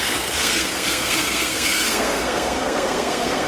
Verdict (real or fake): fake